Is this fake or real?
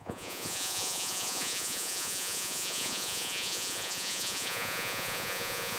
fake